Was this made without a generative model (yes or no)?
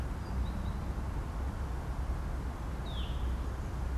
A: yes